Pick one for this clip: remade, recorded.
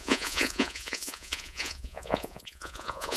remade